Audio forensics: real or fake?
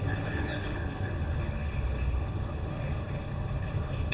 fake